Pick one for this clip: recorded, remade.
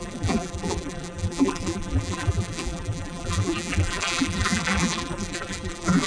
remade